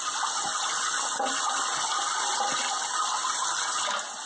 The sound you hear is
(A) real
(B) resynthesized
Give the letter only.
A